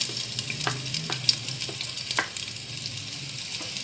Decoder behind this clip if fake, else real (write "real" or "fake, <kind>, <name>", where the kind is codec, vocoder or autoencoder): real